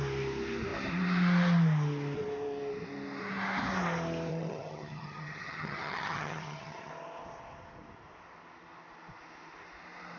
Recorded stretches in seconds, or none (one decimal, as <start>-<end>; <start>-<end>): 0.0-4.3; 6.9-10.2